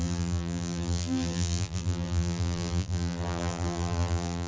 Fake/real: fake